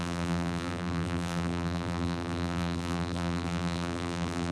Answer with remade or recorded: remade